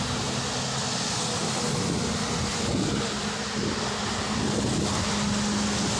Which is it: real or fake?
real